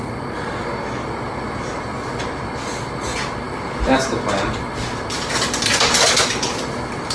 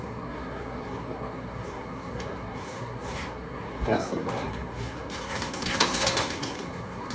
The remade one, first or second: second